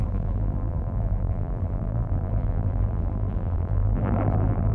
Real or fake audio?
fake